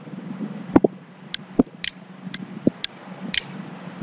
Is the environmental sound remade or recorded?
recorded